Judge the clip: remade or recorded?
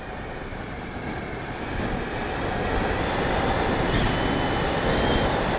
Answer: recorded